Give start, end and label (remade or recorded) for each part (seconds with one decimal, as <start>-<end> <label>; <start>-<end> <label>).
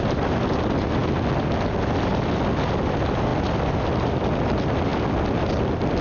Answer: 0.0-6.0 recorded